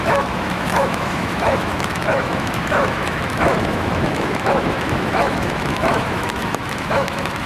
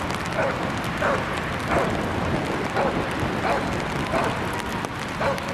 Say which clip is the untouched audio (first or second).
second